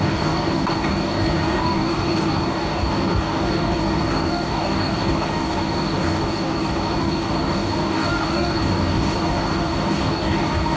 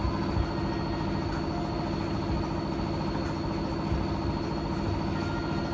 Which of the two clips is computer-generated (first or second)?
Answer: first